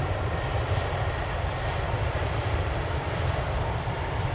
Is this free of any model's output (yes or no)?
no